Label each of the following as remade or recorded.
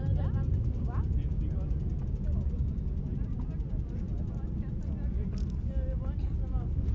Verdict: recorded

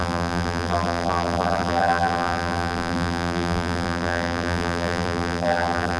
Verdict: remade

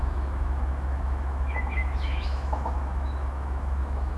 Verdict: remade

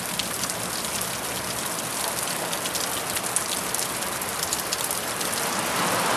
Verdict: recorded